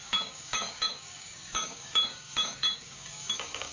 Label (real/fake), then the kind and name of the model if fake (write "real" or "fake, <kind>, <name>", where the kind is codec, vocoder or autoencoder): fake, codec, DAC